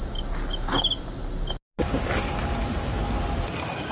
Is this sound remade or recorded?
recorded